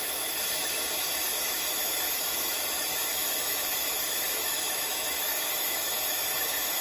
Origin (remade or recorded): remade